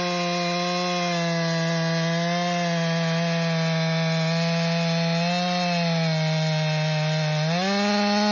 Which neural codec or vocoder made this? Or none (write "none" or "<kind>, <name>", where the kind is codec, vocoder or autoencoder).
none